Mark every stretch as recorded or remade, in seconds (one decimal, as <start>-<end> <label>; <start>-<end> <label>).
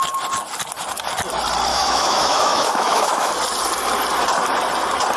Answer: 0.0-1.7 recorded; 1.7-3.3 remade; 3.3-5.2 recorded